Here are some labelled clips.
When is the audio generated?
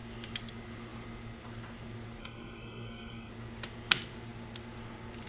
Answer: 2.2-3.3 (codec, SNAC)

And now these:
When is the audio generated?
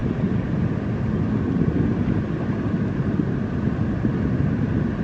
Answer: none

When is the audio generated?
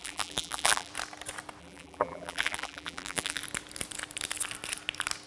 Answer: 0.0-0.9 (vocoder, BigVGAN v2); 1.6-3.4